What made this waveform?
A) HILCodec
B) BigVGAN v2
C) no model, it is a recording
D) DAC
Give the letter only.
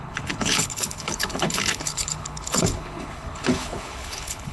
A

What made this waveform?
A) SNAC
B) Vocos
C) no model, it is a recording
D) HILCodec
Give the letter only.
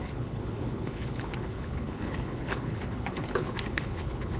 D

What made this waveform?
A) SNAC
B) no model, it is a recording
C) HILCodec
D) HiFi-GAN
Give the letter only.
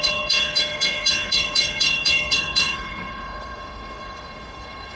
C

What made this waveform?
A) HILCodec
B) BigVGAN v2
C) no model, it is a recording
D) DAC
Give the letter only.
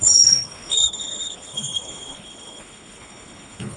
A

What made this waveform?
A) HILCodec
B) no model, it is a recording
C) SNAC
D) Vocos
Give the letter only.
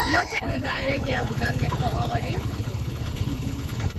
A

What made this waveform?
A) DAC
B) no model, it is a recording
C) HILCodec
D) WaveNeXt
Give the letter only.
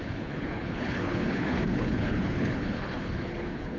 C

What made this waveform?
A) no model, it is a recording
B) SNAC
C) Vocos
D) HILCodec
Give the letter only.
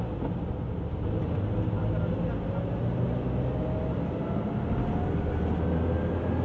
A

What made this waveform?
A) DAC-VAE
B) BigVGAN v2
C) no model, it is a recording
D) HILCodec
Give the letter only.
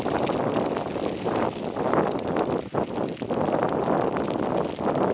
C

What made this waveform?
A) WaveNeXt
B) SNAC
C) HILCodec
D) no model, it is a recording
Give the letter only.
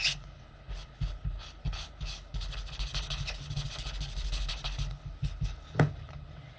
C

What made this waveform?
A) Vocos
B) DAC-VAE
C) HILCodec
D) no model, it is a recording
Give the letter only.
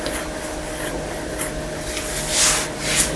D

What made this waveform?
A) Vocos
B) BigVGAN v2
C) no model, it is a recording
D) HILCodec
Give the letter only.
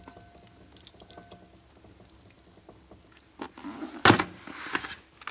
C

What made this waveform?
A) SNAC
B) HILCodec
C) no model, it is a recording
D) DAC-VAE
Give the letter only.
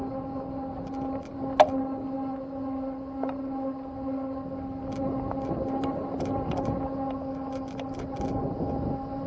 C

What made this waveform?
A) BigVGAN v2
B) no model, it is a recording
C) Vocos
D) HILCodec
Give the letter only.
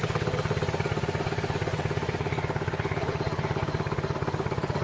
B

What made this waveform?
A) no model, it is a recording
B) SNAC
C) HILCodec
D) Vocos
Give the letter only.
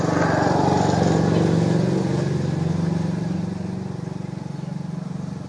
A